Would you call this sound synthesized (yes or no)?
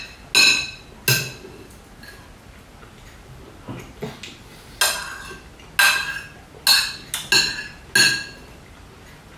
no